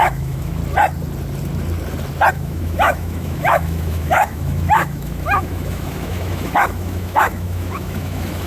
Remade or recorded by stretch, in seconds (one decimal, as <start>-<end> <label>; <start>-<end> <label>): 0.0-0.6 remade; 0.6-2.3 recorded; 2.3-8.5 remade